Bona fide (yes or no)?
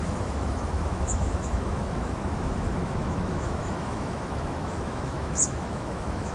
no